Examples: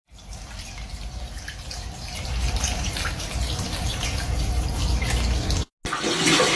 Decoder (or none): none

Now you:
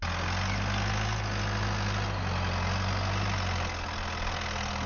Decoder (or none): none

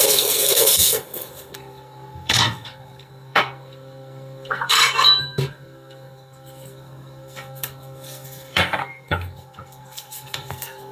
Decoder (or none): codec, SNAC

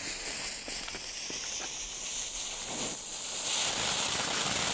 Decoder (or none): none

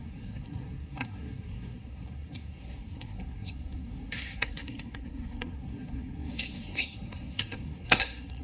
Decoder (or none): codec, SNAC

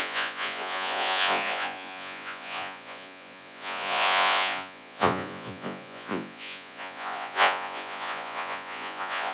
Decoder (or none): vocoder, Vocos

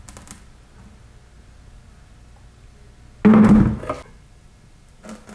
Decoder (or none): none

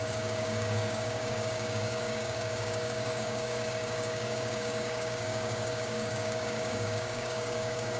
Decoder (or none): codec, DAC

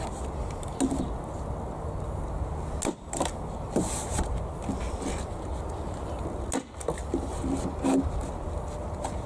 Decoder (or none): none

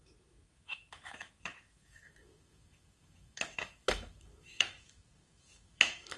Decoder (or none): autoencoder, DAC-VAE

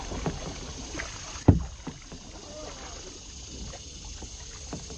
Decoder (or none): none